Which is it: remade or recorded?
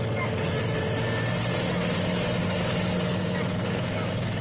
recorded